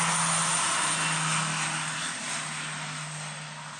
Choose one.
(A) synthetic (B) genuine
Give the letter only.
B